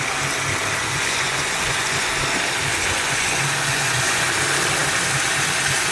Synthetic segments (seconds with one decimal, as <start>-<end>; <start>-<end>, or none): 0.8-2.1; 2.7-4.3